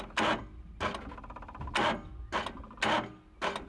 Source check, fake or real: real